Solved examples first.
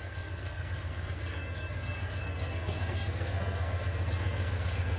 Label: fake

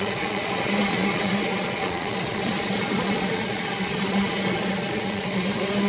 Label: fake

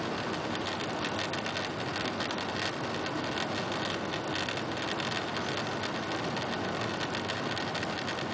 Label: real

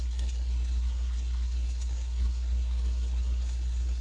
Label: fake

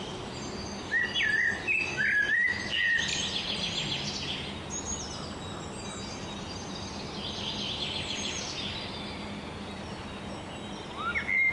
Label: real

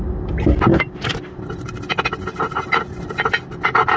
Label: real